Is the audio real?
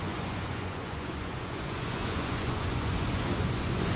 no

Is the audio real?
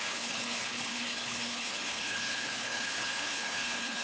no